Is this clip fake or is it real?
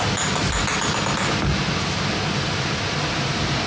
real